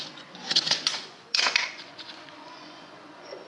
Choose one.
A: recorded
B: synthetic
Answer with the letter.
B